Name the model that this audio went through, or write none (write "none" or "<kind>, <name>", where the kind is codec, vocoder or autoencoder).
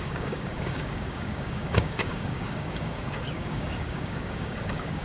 codec, DAC